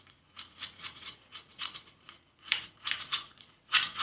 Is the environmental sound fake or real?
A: fake